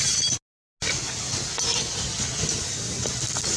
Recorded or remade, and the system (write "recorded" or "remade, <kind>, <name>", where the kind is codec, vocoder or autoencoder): recorded